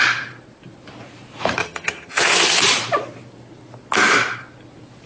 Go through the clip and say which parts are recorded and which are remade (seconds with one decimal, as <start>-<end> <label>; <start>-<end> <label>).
0.0-1.6 recorded; 1.6-2.6 remade; 2.6-5.1 recorded